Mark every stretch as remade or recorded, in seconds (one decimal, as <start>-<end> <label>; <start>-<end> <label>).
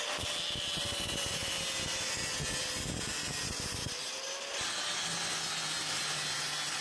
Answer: 0.0-6.8 recorded